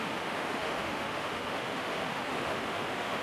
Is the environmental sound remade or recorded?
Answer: remade